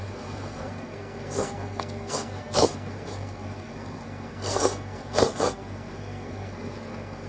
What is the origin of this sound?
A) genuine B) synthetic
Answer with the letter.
B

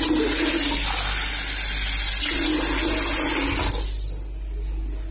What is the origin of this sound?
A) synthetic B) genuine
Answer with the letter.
B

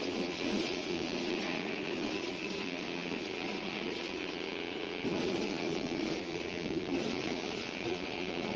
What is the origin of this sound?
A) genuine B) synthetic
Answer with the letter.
B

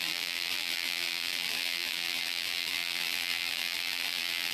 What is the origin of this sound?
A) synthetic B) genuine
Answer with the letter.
A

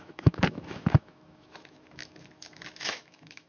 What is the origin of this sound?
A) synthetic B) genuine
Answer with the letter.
A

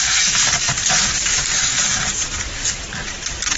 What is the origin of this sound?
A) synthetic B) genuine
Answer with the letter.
B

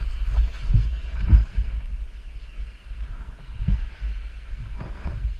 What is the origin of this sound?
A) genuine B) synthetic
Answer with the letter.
B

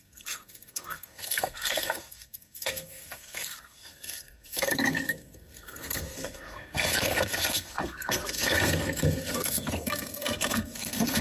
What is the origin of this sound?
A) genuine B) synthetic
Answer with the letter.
B